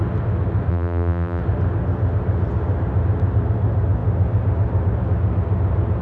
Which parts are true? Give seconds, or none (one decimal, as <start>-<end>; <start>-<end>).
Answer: 0.0-0.7; 1.4-6.0